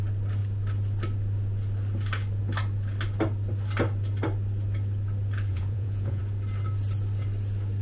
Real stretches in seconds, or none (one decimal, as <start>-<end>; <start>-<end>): 0.0-5.5; 6.2-7.8